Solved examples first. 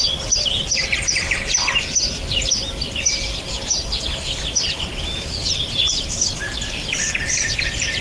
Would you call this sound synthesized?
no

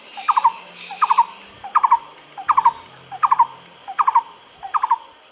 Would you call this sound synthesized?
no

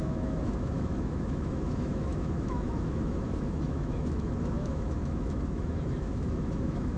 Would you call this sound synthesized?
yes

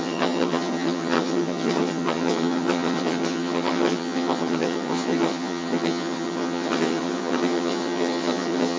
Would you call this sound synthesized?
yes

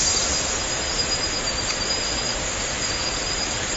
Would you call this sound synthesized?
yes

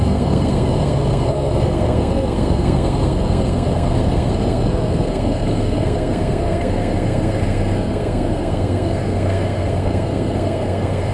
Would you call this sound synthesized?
yes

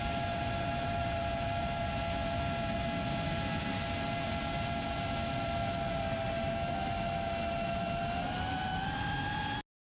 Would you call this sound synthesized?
no